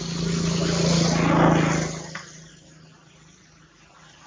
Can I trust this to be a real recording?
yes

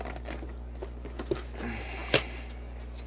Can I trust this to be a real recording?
yes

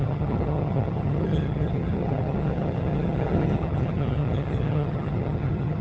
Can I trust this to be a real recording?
no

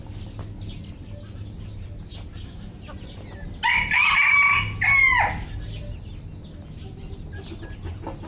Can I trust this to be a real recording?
yes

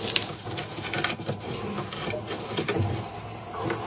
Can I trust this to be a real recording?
yes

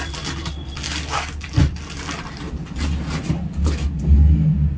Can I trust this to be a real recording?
yes